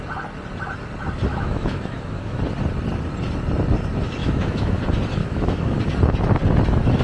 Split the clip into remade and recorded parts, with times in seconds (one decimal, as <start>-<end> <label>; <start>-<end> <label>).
0.0-1.3 recorded; 1.3-2.4 remade; 2.4-4.2 recorded; 4.2-4.8 remade; 4.8-5.2 recorded; 5.2-5.8 remade; 5.8-7.0 recorded